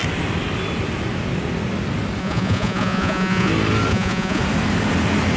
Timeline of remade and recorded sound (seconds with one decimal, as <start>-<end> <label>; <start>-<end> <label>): 0.0-2.2 recorded; 2.2-3.5 remade; 3.5-3.9 recorded; 3.9-4.4 remade; 4.4-5.4 recorded